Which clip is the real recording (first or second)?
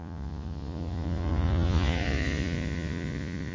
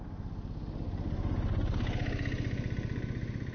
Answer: second